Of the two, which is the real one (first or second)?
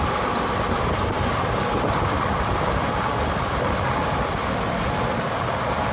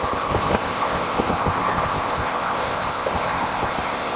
first